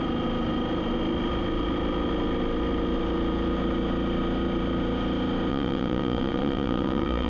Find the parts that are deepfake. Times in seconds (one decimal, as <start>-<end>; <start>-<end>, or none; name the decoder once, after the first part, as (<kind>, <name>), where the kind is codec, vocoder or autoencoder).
5.5-7.3 (vocoder, WaveNeXt)